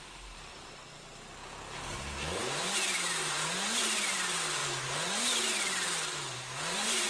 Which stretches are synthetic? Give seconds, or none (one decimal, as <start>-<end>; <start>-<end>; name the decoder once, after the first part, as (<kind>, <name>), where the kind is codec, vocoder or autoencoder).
0.0-4.6 (vocoder, BigVGAN v2); 5.2-7.1